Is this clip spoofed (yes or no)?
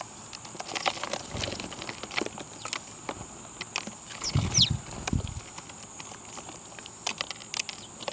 no